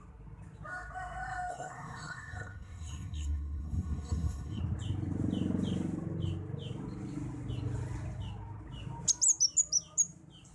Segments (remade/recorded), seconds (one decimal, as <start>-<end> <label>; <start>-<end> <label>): 0.0-1.5 recorded; 1.5-4.6 remade; 4.6-10.5 recorded